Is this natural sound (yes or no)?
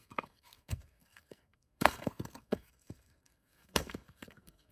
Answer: no